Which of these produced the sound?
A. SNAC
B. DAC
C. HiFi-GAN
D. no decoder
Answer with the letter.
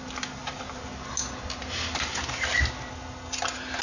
D